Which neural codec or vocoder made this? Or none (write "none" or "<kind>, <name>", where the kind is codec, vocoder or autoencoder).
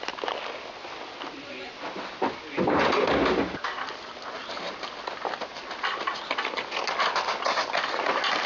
none